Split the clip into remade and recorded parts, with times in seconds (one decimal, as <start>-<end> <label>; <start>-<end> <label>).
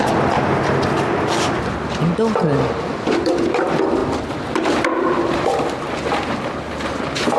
0.0-7.4 recorded